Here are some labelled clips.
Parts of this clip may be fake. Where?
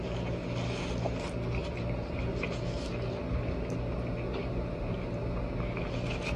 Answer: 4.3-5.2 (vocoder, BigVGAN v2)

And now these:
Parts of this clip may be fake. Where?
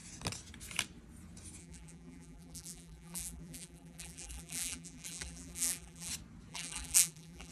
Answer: 1.6-6.1 (vocoder, BigVGAN v2); 6.5-7.5